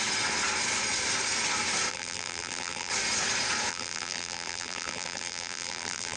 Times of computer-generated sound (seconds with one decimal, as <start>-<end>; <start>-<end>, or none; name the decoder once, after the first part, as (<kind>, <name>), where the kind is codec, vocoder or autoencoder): 1.9-2.9 (vocoder, BigVGAN v2); 3.7-6.2